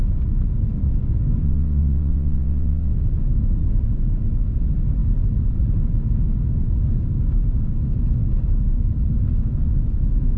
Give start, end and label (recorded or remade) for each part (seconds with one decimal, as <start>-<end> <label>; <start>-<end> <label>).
0.0-1.4 recorded; 1.4-2.9 remade; 2.9-10.4 recorded